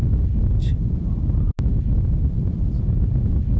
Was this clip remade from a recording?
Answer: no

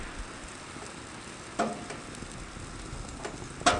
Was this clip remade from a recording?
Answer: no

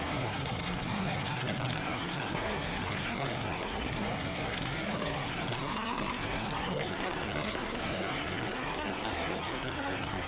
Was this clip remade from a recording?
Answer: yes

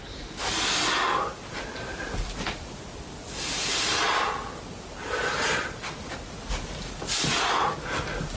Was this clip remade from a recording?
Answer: no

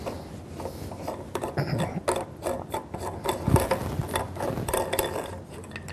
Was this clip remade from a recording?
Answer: no